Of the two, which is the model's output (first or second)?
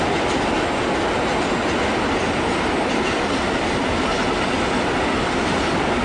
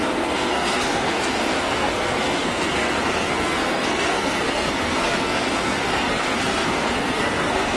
second